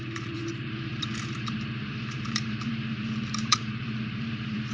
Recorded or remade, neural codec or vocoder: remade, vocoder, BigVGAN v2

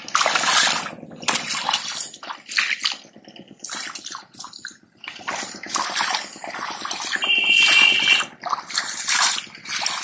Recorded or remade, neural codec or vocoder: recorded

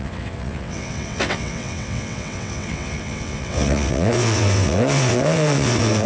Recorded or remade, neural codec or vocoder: remade, vocoder, WaveNeXt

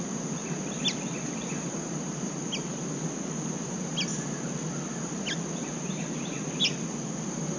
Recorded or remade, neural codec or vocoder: recorded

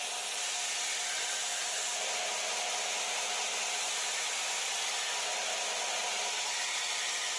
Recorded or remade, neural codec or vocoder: recorded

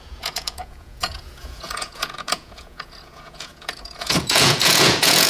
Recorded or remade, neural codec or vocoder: remade, vocoder, Vocos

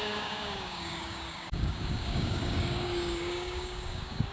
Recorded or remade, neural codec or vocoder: remade, codec, DAC